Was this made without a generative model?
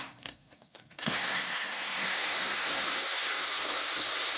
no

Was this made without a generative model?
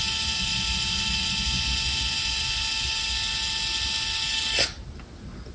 yes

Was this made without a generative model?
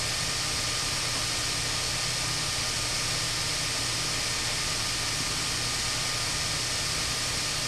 yes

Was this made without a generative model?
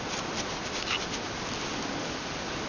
yes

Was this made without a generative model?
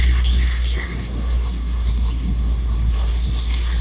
no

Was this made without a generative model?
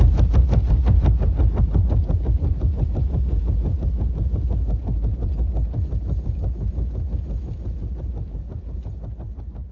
yes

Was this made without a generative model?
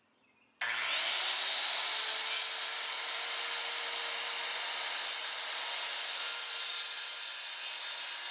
yes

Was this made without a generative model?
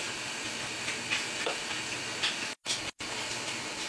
yes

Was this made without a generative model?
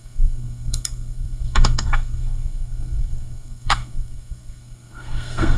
no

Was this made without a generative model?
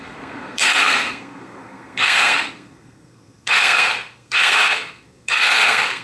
no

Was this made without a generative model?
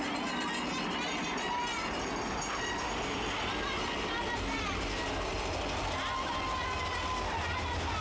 yes